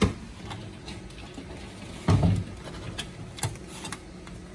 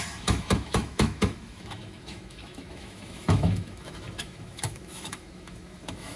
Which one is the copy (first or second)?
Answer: second